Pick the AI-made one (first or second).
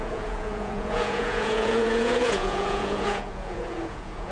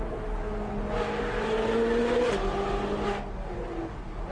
first